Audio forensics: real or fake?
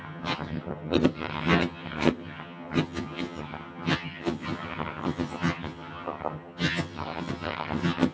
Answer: fake